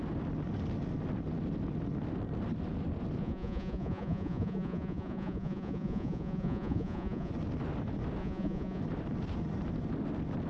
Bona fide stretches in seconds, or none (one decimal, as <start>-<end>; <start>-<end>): 0.0-3.2; 7.3-8.2; 8.8-10.5